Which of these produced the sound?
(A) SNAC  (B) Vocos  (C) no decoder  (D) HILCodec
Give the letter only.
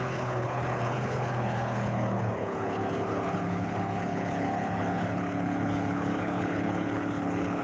D